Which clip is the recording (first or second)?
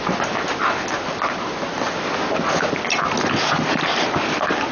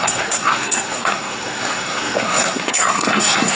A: first